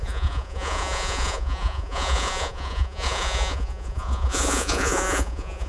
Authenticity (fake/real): fake